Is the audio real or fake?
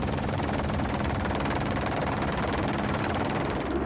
real